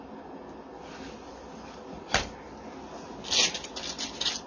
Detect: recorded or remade recorded